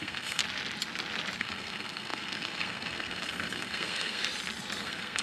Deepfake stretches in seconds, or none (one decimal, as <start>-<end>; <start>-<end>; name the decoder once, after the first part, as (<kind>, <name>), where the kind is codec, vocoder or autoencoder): 0.0-0.4 (codec, SNAC); 1.4-4.2; 4.8-5.2